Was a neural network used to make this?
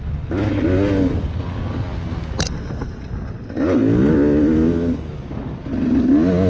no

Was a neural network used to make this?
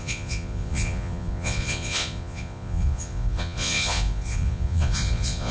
yes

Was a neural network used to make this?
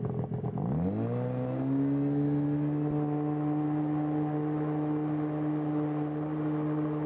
no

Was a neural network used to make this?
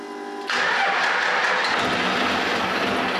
no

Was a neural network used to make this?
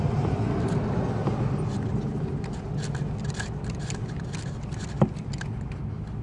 no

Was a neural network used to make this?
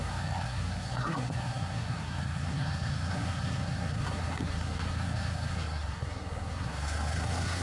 yes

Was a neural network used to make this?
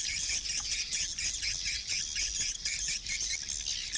no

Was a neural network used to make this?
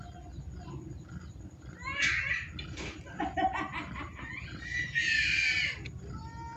no